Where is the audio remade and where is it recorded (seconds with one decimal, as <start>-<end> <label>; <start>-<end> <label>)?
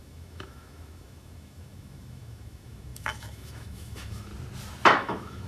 0.0-4.3 remade; 4.3-4.9 recorded; 4.9-5.5 remade